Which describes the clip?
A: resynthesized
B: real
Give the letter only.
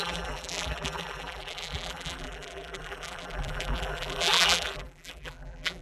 A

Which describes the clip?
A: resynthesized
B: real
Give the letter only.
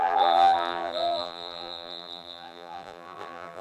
A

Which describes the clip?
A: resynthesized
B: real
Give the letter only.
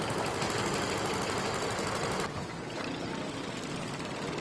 B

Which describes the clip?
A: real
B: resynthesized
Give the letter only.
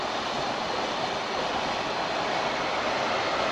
A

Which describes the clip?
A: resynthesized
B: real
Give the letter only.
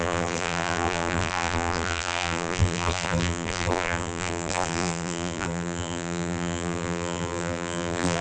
A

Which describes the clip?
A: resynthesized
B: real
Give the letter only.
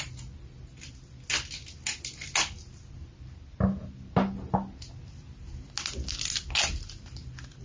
B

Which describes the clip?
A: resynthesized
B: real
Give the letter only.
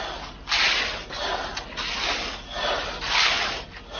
B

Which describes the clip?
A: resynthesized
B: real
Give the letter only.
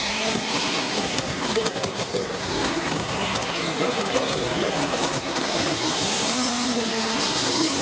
A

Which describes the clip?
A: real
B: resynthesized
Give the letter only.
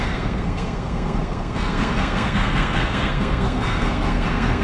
B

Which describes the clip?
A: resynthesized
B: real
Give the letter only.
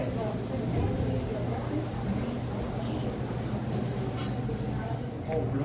B